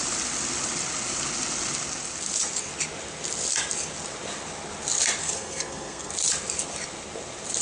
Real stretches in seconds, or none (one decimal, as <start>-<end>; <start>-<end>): 0.0-5.2; 6.1-7.6